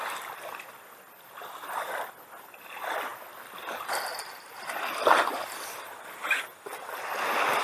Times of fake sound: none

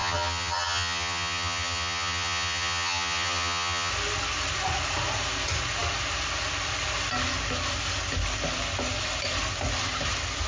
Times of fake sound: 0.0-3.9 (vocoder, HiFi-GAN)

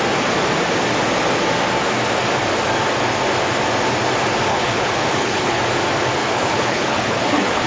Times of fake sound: 4.5-5.6 (codec, HILCodec); 6.2-7.7